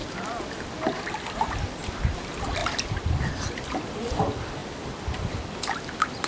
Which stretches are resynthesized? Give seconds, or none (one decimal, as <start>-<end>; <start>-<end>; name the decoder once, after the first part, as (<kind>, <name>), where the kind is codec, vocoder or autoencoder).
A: 0.0-6.3 (vocoder, BigVGAN v2)

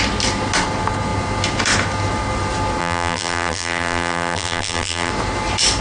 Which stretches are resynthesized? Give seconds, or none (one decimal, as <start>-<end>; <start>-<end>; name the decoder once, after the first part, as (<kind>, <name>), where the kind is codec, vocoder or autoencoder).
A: 2.8-5.1 (vocoder, BigVGAN v2)

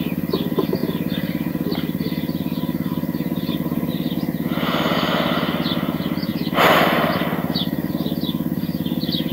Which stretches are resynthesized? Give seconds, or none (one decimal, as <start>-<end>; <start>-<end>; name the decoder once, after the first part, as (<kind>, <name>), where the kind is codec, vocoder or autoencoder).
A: 6.3-7.9 (vocoder, BigVGAN v2)

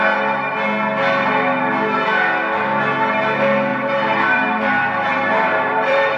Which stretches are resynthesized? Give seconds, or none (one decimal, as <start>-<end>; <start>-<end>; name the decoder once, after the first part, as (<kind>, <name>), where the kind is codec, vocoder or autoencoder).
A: 3.7-6.2 (vocoder, BigVGAN v2)

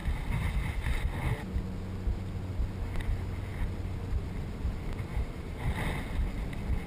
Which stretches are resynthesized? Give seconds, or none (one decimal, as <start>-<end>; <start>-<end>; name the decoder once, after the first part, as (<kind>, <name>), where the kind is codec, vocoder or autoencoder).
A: 5.1-5.6 (vocoder, BigVGAN v2)

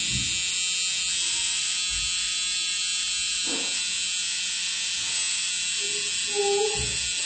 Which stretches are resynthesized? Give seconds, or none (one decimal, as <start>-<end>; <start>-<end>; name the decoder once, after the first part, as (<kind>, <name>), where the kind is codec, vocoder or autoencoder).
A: none

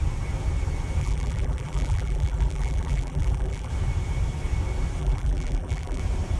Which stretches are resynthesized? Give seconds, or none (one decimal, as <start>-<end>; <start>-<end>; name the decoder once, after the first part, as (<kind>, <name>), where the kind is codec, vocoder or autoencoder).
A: 1.0-3.7 (vocoder, BigVGAN v2); 5.0-6.0

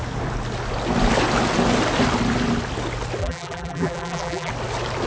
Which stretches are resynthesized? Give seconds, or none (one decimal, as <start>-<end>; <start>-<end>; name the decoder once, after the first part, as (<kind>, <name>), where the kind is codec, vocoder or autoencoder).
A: 3.2-4.5 (vocoder, BigVGAN v2)